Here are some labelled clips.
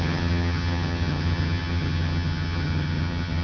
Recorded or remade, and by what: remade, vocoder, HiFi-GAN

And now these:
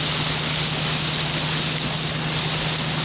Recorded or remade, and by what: recorded